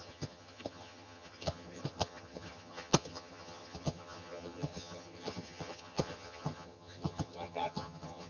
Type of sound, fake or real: fake